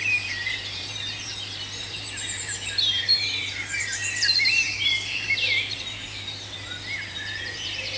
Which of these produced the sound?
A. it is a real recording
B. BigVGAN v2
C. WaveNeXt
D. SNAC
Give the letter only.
B